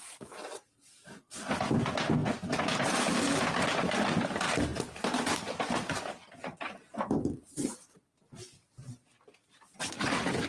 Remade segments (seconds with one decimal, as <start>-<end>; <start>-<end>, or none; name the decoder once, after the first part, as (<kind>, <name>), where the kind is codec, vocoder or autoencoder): none